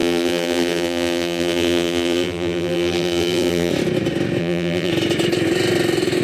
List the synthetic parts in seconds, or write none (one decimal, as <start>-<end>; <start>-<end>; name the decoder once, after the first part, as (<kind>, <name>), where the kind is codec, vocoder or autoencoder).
0.0-3.7 (vocoder, BigVGAN v2); 4.4-4.9